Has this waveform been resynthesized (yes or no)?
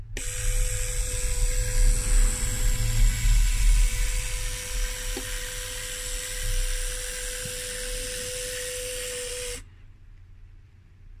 no